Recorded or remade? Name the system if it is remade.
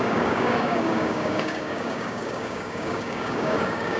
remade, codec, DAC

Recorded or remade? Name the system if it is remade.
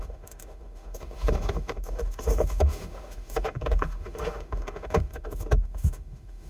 remade, autoencoder, DAC-VAE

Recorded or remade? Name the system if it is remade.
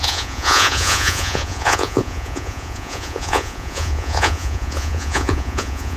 remade, vocoder, Vocos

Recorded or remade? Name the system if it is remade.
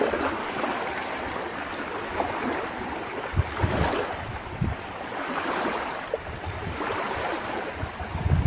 recorded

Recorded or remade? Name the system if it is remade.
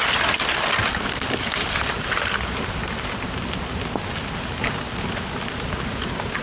recorded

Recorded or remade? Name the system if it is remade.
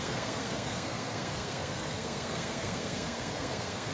remade, codec, SNAC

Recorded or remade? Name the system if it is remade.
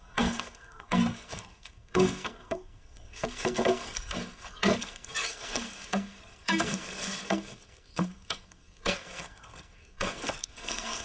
remade, codec, SNAC